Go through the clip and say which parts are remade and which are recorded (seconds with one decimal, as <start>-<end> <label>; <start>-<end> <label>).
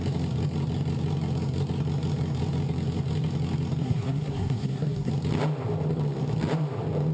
0.0-3.8 recorded; 3.8-5.1 remade; 5.1-7.1 recorded